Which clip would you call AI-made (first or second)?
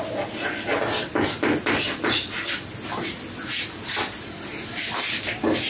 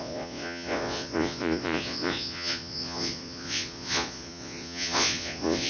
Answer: second